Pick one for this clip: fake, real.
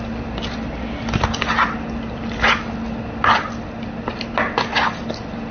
real